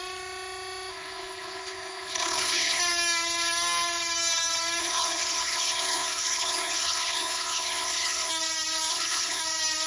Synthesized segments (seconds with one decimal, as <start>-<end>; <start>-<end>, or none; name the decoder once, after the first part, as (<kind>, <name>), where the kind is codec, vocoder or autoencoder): 0.9-2.8 (codec, HILCodec); 4.8-8.3; 8.9-9.4